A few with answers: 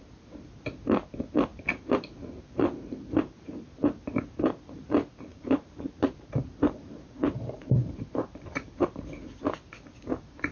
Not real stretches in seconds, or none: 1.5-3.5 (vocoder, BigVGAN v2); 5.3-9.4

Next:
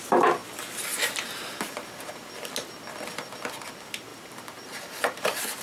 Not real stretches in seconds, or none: 4.1-5.6 (vocoder, BigVGAN v2)

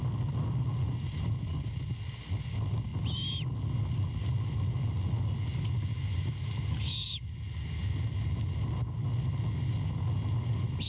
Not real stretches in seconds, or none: none

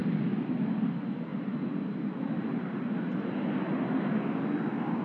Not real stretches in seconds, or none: none

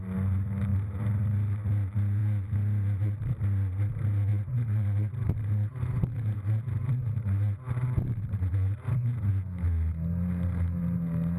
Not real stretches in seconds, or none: 0.7-1.2 (vocoder, BigVGAN v2); 4.3-9.3

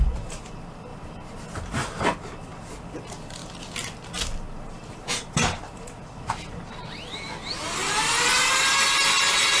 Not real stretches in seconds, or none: 8.3-8.9 (vocoder, BigVGAN v2)

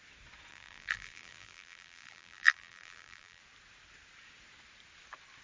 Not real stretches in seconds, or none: 0.5-3.4 (vocoder, BigVGAN v2)

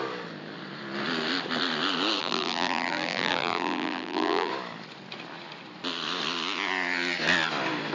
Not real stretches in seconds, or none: 2.2-4.5 (vocoder, BigVGAN v2)